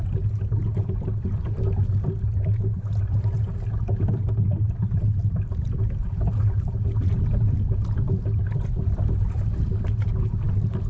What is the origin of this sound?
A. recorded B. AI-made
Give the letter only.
A